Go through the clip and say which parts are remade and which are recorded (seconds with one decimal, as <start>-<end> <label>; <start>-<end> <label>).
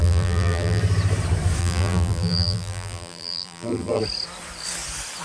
0.0-0.8 remade; 0.8-1.6 recorded; 1.6-4.0 remade; 4.0-5.2 recorded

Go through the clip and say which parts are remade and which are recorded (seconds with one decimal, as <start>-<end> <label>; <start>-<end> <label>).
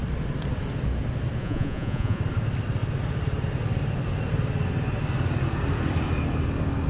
0.0-1.4 recorded; 1.4-2.2 remade; 2.2-6.9 recorded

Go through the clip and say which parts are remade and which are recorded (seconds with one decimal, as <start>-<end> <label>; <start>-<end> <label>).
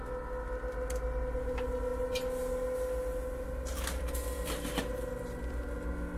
0.0-6.2 recorded